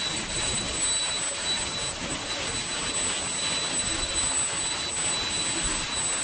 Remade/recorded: recorded